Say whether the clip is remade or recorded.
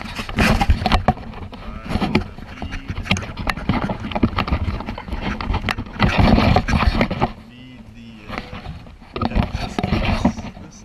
recorded